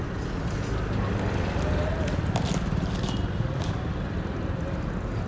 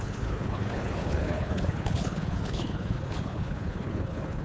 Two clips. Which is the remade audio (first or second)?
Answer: second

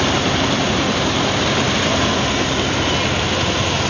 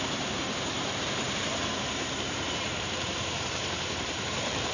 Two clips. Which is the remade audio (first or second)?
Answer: second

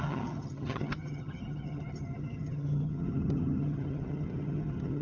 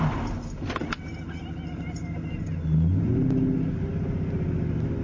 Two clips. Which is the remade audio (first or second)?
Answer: first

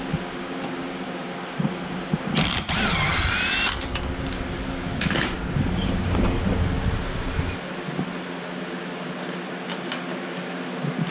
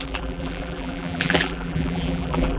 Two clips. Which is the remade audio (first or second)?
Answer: second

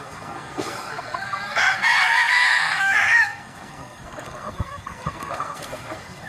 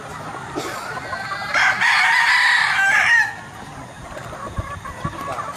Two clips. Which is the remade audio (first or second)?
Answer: first